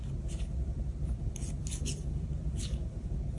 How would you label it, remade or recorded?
recorded